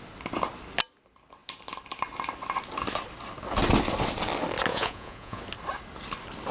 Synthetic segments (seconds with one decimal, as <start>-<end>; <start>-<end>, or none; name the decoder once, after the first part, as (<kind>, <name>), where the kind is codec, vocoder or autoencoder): 4.7-5.4 (vocoder, Vocos)